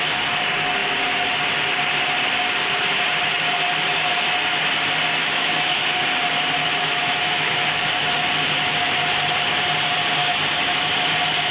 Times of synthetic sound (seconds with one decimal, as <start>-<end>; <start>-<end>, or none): 5.2-5.8; 6.6-7.8; 10.2-10.8